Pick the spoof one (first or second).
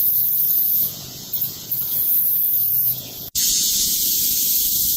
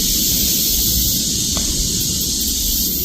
first